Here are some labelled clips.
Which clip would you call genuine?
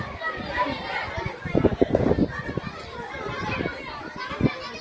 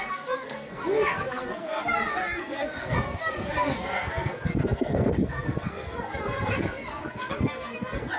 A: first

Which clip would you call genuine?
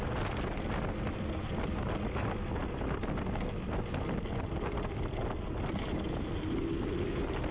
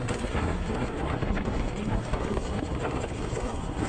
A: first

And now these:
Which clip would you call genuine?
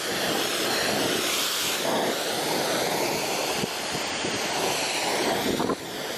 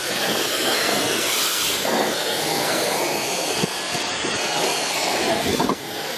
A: first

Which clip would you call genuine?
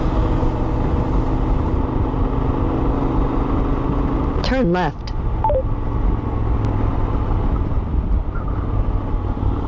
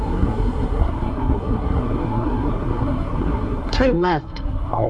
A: first